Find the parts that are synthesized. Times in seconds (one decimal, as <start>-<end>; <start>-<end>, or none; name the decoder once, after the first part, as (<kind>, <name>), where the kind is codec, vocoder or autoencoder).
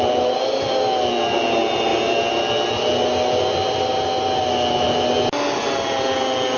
none